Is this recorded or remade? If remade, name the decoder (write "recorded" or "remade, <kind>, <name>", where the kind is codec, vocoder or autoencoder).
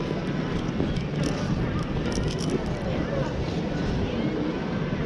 recorded